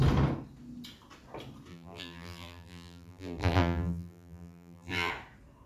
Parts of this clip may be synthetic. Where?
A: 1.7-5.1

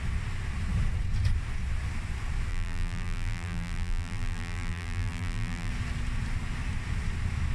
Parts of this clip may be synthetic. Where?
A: 2.5-5.7

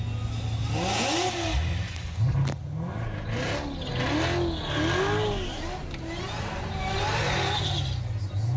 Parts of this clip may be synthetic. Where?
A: 5.8-7.2

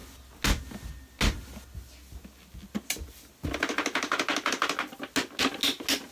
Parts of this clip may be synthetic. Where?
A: none